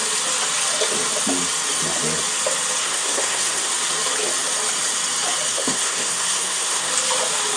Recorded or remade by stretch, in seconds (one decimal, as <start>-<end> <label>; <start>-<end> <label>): 0.0-2.8 recorded; 2.8-3.7 remade; 3.7-5.5 recorded; 5.5-6.9 remade; 6.9-7.6 recorded